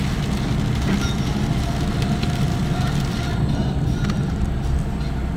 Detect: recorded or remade recorded